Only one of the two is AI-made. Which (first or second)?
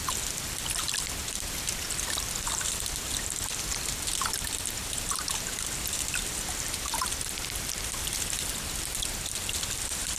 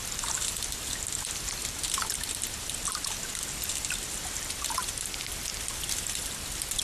first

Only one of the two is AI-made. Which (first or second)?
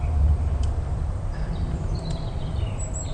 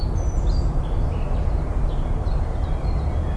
first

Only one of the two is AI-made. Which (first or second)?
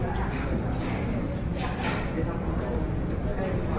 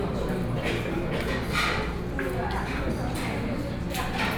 first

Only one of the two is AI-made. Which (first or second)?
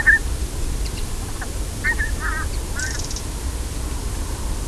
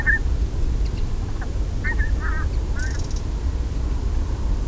first